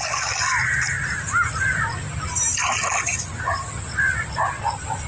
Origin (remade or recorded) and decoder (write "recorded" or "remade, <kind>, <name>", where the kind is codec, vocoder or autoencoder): recorded